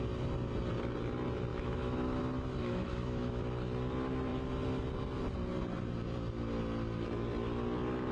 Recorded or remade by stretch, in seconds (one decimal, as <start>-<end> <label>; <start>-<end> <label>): 0.0-1.5 recorded; 1.5-2.2 remade; 2.2-2.6 recorded; 2.6-3.4 remade; 3.4-8.1 recorded